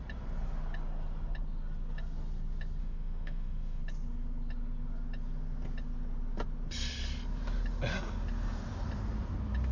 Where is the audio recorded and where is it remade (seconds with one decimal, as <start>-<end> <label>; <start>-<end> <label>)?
0.0-2.8 recorded; 2.8-3.8 remade; 3.8-9.7 recorded